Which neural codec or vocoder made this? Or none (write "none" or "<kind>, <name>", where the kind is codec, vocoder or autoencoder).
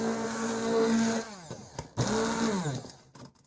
none